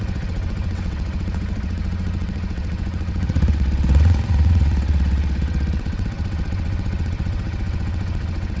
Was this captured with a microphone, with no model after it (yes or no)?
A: no